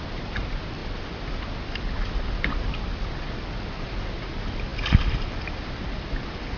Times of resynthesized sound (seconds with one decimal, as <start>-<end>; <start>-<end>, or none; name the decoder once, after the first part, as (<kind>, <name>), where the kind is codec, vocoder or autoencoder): none